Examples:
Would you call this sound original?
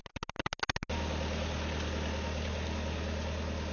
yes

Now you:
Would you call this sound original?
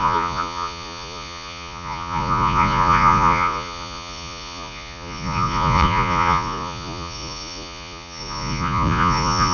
no